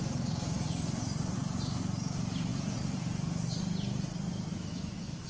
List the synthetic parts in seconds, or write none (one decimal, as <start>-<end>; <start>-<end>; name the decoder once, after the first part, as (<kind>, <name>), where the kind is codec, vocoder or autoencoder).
4.5-5.3 (autoencoder, DAC-VAE)